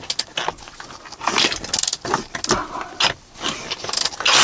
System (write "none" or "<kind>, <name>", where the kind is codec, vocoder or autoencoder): none